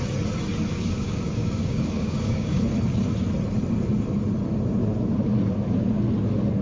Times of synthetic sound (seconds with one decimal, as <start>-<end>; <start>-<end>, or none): 0.7-2.6